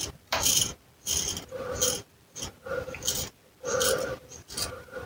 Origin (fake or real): real